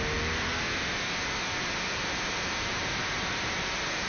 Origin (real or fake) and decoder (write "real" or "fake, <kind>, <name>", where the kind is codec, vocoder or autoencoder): real